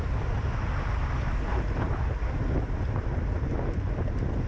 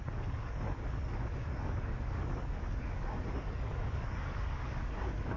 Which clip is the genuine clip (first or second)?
first